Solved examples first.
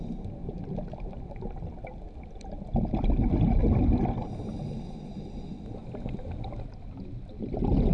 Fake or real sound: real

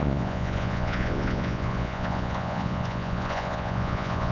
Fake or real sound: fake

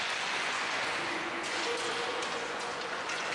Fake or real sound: fake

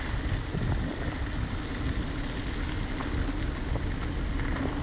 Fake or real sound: real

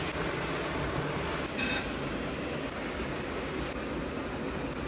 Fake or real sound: real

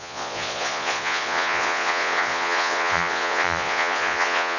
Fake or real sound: fake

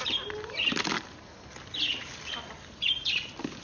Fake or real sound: real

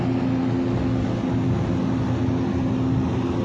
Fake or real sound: real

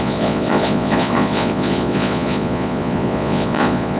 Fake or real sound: fake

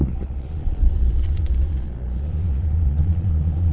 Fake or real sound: fake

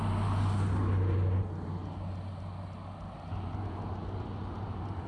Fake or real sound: real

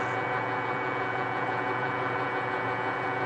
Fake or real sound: fake